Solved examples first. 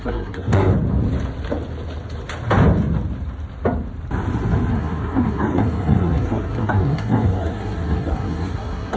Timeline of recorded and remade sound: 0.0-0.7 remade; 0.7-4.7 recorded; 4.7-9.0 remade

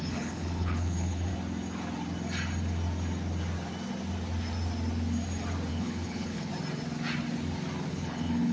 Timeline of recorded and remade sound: 0.0-1.3 remade; 1.3-5.7 recorded; 5.7-6.5 remade; 6.5-7.9 recorded; 7.9-8.5 remade

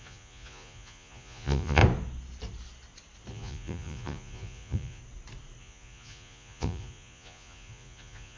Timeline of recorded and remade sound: 0.0-1.8 remade; 1.8-3.3 recorded; 3.3-5.0 remade; 5.0-5.6 recorded; 5.6-8.4 remade

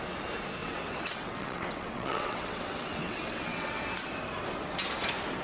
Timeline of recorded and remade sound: 0.0-0.6 recorded; 0.6-3.8 remade; 3.8-5.4 recorded

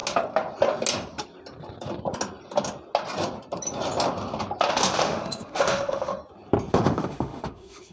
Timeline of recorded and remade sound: 0.0-4.7 recorded; 4.7-6.1 remade; 6.1-6.7 recorded; 6.7-7.9 remade

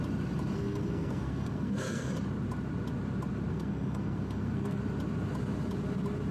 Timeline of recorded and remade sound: 0.0-0.5 recorded; 0.5-2.1 remade; 2.1-3.5 recorded; 3.5-4.8 remade; 4.8-6.3 recorded

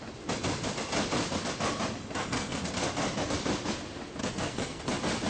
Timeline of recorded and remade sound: 0.0-2.2 recorded; 2.2-2.7 remade; 2.7-4.2 recorded; 4.2-4.8 remade; 4.8-5.3 recorded